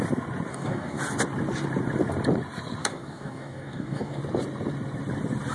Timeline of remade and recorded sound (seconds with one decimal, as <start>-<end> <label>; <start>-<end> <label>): 0.0-0.5 recorded; 0.5-1.0 remade; 1.0-2.8 recorded; 2.8-4.2 remade; 4.2-5.5 recorded